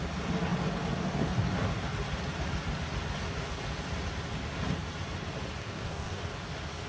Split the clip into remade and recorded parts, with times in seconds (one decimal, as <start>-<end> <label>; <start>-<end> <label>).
0.0-5.6 recorded; 5.6-6.2 remade; 6.2-6.9 recorded